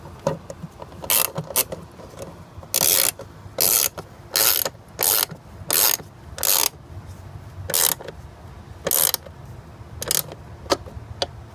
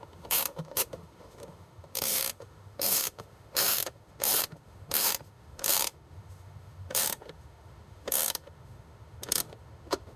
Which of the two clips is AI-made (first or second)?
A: second